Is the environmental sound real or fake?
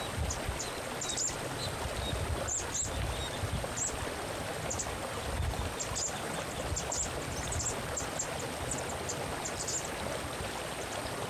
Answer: real